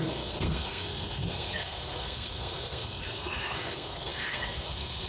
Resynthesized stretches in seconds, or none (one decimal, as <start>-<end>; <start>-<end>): 0.0-5.1